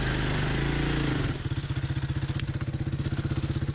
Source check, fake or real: real